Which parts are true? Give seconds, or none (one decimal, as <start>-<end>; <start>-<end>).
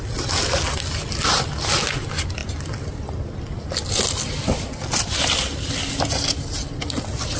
0.0-7.4